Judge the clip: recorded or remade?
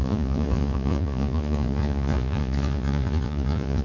remade